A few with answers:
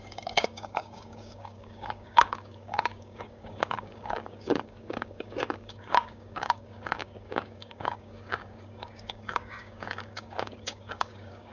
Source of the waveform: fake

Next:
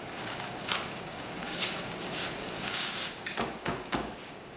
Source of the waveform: fake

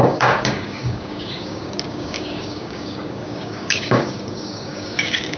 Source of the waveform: fake